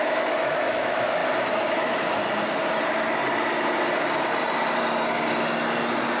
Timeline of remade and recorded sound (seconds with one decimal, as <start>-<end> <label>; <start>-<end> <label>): 0.0-1.2 remade; 1.2-1.7 recorded; 1.7-2.2 remade; 2.2-6.2 recorded